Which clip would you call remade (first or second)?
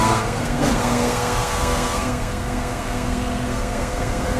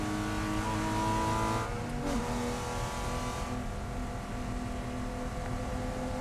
first